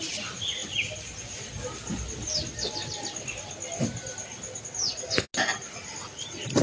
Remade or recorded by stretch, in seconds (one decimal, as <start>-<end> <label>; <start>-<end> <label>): 0.0-6.6 recorded